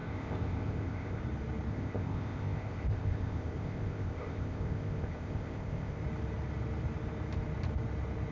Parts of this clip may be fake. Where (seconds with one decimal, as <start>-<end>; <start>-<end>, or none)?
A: 0.0-1.2; 1.7-6.0